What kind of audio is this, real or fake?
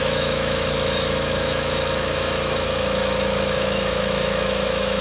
fake